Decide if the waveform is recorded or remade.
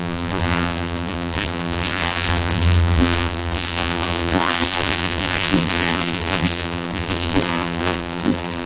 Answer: remade